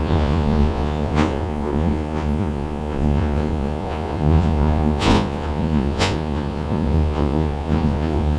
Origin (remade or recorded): remade